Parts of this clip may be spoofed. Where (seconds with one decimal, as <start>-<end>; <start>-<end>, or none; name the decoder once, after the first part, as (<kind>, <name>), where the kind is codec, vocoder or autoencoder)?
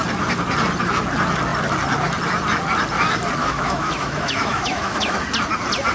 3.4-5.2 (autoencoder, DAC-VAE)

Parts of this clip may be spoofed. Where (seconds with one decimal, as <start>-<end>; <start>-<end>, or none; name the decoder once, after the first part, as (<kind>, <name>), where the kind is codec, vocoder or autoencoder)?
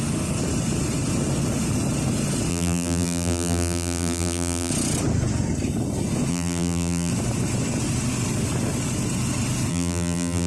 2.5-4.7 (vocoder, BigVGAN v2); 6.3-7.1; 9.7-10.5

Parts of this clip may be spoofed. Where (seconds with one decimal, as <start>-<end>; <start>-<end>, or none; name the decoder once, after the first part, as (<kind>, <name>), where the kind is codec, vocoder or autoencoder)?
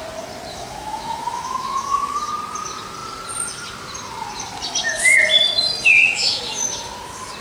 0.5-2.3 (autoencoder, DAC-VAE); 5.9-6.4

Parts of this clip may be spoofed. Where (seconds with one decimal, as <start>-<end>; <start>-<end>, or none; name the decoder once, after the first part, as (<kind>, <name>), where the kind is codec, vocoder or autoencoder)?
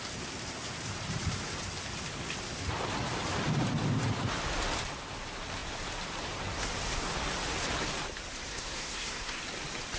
8.5-9.4 (codec, SNAC)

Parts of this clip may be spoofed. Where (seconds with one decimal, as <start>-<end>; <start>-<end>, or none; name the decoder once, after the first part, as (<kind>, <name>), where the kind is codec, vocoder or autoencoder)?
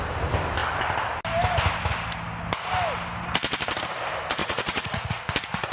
4.4-5.2 (vocoder, Vocos)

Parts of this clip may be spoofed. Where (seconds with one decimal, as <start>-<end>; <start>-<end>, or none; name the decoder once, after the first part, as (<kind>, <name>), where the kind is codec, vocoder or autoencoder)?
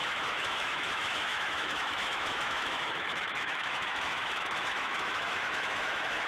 0.0-6.3 (autoencoder, DAC-VAE)